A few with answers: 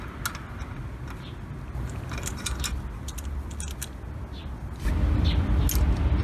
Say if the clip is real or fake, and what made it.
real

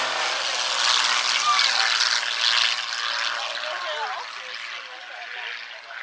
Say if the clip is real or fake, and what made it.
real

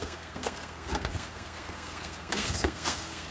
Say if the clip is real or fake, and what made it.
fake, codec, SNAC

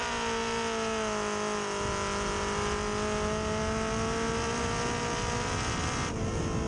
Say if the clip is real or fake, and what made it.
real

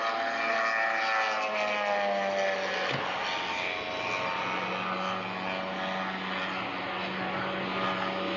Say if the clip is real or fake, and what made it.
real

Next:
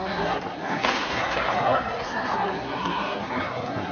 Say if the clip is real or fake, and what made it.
fake, codec, SNAC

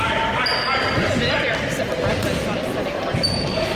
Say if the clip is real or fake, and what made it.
real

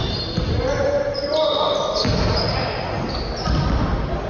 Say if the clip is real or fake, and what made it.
real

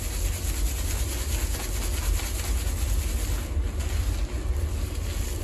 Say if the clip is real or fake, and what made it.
real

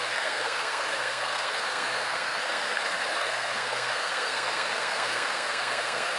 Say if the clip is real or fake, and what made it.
fake, codec, SNAC